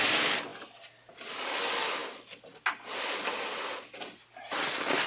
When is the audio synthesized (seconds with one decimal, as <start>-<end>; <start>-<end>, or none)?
none